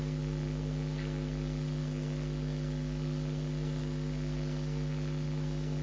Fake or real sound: fake